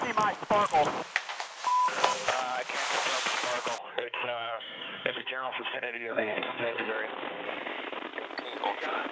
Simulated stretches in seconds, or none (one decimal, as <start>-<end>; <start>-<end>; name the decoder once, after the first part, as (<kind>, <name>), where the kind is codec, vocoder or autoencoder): 3.9-6.9 (codec, SNAC)